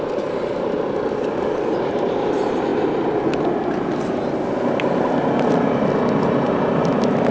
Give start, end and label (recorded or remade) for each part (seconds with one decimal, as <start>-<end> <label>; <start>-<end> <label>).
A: 0.0-1.1 recorded; 1.1-1.7 remade; 1.7-7.3 recorded